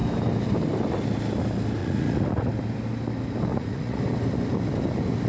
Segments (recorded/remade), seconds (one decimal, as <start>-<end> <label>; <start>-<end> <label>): 0.0-1.8 recorded; 1.8-2.5 remade; 2.5-3.5 recorded; 3.5-4.0 remade; 4.0-5.3 recorded